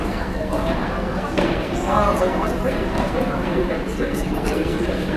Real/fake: fake